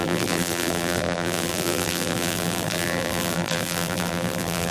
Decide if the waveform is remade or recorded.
remade